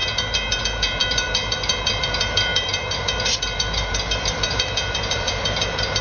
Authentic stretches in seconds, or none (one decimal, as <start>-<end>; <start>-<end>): none